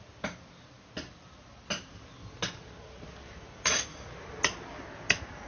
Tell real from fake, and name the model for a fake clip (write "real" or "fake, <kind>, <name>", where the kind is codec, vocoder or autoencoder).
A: real